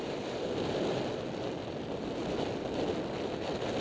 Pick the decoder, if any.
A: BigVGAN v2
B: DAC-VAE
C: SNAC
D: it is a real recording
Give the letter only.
D